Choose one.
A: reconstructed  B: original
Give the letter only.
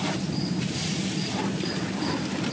B